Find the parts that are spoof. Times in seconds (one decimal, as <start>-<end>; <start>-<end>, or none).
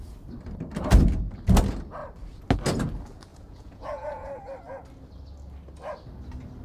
3.3-4.4